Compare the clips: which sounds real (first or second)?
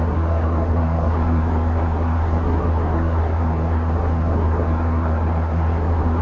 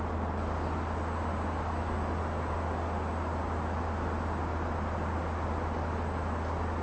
second